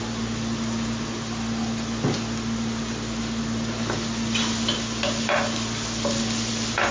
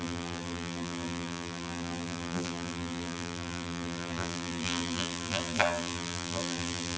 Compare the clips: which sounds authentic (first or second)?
first